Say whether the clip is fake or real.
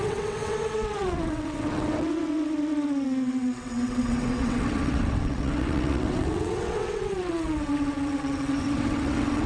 fake